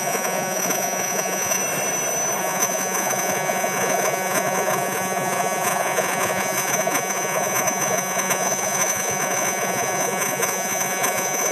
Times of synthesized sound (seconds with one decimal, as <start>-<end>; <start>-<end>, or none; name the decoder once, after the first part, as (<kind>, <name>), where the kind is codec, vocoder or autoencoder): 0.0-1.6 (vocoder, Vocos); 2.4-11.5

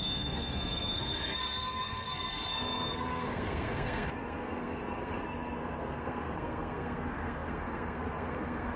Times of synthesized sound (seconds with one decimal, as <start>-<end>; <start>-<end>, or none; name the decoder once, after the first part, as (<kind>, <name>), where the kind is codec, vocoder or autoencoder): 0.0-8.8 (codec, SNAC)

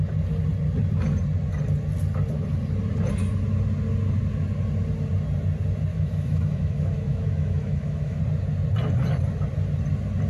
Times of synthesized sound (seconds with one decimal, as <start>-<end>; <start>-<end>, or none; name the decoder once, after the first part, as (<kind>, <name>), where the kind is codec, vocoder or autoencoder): 5.9-8.2 (autoencoder, DAC-VAE)

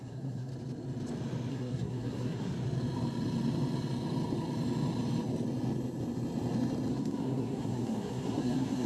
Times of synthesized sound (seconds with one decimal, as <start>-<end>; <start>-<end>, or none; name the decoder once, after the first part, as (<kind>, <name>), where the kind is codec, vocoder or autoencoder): 0.0-0.5 (codec, SNAC); 1.5-2.5; 6.9-8.9

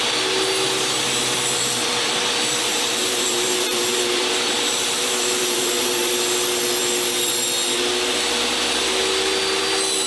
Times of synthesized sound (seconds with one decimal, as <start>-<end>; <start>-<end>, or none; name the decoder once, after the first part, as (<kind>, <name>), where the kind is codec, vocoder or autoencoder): 2.7-6.1 (vocoder, BigVGAN v2)